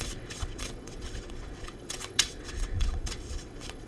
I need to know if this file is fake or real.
fake